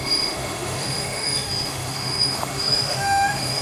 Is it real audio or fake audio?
fake